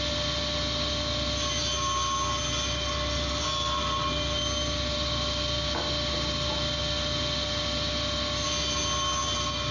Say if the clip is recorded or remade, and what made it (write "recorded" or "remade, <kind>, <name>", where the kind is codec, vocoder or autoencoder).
recorded